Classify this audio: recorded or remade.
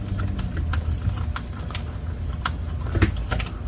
recorded